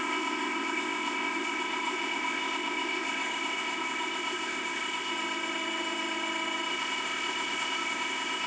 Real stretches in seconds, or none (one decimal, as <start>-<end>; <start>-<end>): 5.1-6.7